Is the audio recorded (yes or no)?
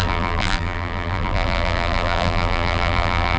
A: no